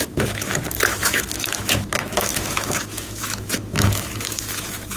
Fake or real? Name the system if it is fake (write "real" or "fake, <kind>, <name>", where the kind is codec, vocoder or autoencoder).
fake, autoencoder, DAC-VAE